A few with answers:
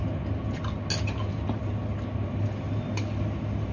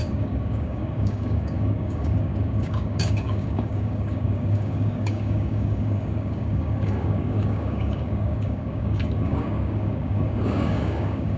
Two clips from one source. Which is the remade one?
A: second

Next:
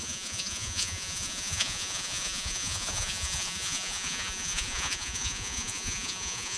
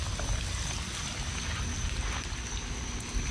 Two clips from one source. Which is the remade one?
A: first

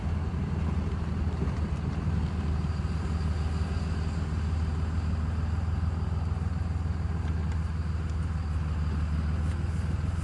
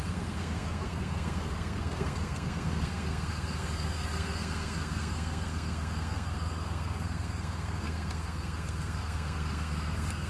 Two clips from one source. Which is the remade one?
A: second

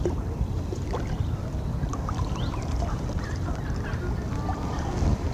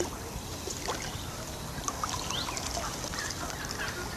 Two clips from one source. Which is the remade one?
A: first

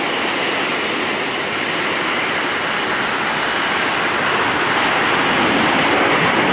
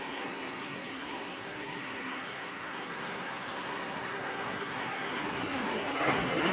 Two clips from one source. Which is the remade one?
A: second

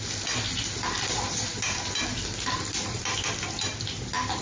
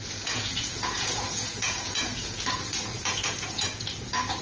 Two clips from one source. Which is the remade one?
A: second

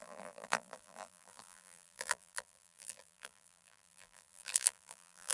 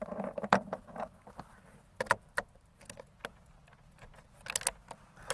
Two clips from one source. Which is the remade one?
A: first